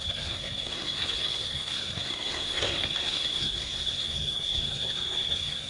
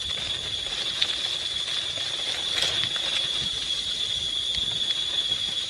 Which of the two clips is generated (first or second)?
first